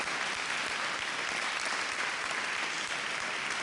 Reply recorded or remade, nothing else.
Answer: recorded